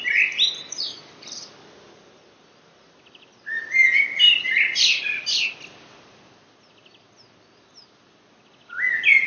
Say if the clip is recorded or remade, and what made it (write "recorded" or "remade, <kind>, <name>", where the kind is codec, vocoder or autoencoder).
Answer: recorded